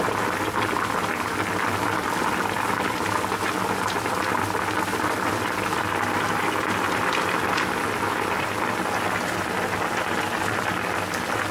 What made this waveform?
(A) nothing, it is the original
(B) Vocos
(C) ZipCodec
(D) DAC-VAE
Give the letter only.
A